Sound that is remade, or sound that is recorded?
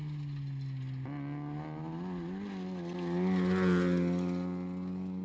recorded